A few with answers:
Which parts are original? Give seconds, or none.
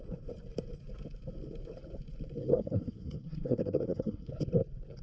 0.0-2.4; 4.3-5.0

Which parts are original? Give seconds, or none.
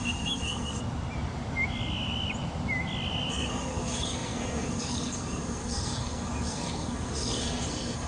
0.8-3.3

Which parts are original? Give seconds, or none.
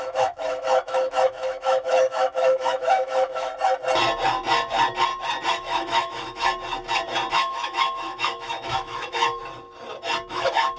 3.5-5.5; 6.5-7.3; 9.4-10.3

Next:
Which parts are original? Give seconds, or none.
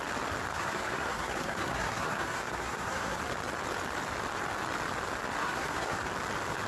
0.0-0.5; 3.2-5.4; 6.0-6.7